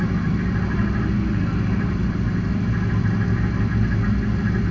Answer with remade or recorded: recorded